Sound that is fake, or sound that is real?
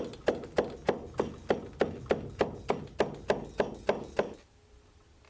real